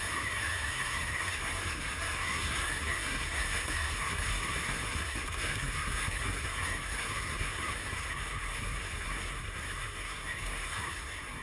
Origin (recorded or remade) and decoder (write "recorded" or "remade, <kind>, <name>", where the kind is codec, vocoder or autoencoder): remade, codec, SNAC